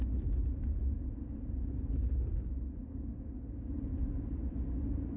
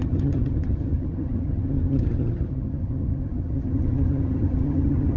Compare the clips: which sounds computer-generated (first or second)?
second